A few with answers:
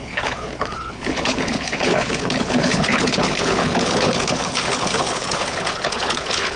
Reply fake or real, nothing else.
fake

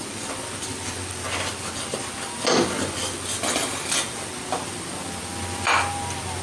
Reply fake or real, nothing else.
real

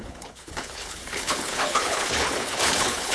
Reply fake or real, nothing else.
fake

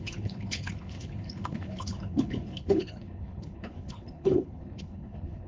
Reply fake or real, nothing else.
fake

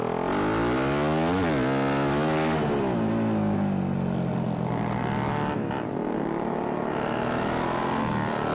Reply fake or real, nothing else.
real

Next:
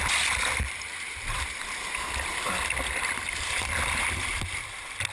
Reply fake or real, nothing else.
real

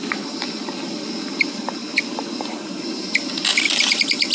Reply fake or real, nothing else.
real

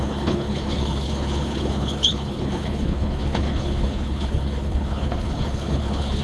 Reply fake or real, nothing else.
fake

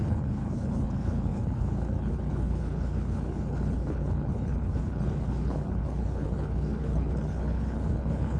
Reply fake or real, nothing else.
fake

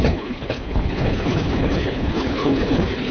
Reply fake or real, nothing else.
fake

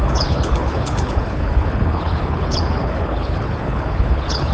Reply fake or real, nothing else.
fake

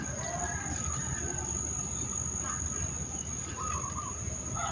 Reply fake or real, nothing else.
real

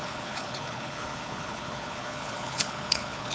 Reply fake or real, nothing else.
fake